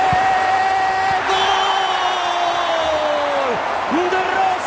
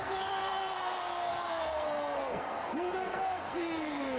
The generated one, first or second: second